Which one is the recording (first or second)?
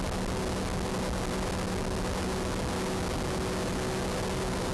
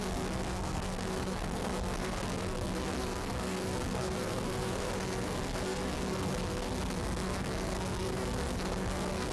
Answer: first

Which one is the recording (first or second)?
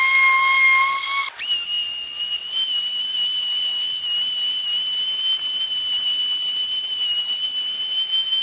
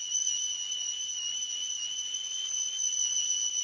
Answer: first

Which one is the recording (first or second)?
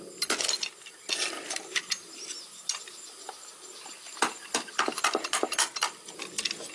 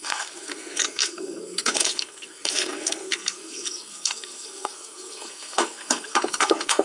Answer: first